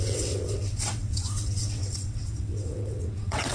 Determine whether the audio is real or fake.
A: fake